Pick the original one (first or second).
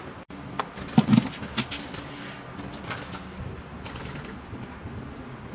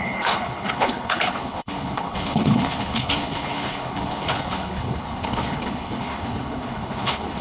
first